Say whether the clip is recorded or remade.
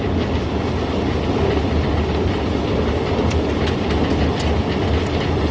recorded